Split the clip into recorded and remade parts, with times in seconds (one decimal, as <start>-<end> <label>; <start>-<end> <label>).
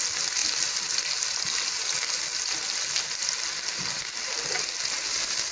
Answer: 0.0-5.5 recorded